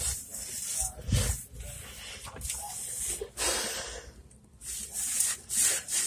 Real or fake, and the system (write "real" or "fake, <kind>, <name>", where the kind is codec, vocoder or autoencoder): real